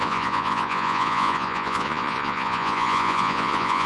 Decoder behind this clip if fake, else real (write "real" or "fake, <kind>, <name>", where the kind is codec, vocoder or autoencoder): fake, vocoder, Vocos